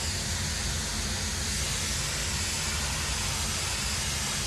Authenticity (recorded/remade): recorded